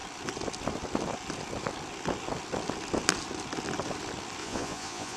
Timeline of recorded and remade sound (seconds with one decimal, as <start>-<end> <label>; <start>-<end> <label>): 0.0-4.4 recorded; 4.4-5.2 remade